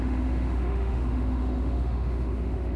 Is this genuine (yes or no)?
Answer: no